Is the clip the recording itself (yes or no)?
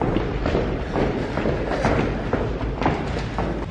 yes